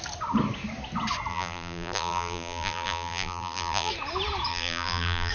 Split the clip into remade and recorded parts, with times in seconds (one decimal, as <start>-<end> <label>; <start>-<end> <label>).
0.0-1.3 recorded; 1.3-3.9 remade; 3.9-4.5 recorded; 4.5-5.3 remade